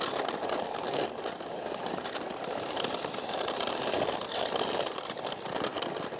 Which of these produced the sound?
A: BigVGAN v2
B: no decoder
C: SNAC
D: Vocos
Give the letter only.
B